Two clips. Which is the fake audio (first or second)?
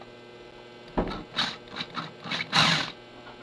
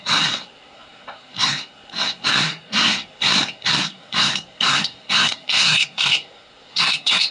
second